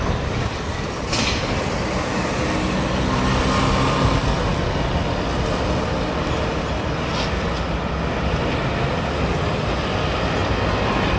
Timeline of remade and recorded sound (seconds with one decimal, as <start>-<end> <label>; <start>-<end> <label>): 0.0-11.2 recorded